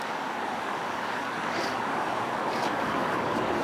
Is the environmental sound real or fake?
fake